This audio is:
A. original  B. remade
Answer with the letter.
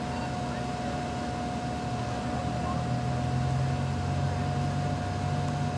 A